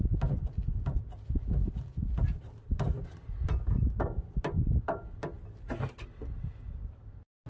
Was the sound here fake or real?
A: real